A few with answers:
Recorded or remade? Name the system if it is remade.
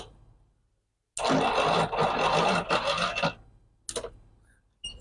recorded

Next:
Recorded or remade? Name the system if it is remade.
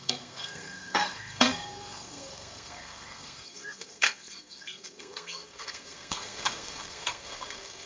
remade, codec, SNAC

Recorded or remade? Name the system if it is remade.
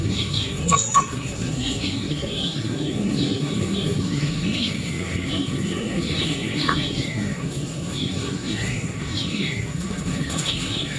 remade, codec, SNAC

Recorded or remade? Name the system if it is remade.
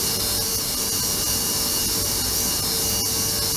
recorded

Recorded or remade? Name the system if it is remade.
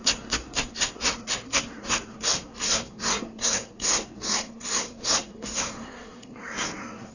remade, codec, SNAC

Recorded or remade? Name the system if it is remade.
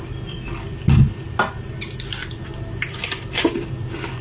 recorded